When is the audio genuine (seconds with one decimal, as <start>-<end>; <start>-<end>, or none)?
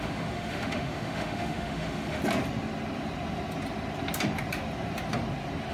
2.2-5.7